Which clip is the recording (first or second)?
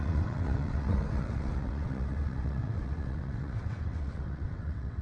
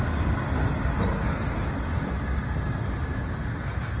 second